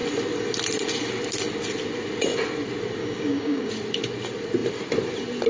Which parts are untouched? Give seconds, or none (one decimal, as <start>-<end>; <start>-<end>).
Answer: 0.0-3.0; 3.7-5.5